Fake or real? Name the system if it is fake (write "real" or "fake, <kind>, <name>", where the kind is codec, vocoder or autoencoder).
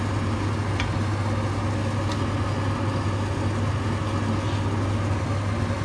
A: real